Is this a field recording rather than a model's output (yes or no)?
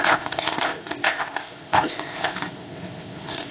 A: no